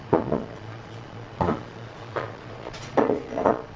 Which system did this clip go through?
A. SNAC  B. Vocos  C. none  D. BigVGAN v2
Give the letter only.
B